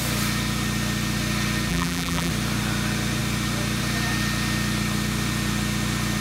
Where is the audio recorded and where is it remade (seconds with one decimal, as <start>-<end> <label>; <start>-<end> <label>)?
0.0-1.7 recorded; 1.7-2.3 remade; 2.3-6.2 recorded